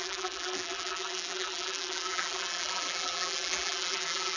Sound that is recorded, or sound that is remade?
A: remade